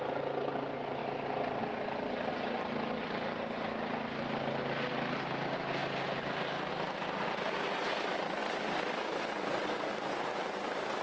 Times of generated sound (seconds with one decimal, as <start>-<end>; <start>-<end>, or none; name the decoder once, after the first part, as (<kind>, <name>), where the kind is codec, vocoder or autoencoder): 8.4-9.2 (vocoder, BigVGAN v2)